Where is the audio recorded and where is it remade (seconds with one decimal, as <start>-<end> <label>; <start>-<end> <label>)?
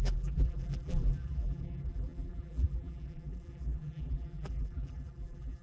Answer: 0.0-5.6 remade